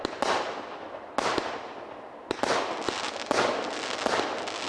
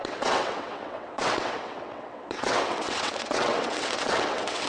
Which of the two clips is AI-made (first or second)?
second